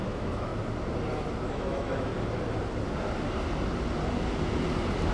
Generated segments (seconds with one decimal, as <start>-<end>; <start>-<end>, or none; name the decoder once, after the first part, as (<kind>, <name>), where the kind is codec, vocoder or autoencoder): 0.0-0.5 (autoencoder, DAC-VAE); 1.5-2.1